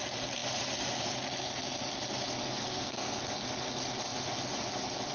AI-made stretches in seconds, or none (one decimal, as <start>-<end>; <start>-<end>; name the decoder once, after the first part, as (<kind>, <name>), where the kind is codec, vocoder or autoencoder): 2.4-3.2 (codec, SNAC)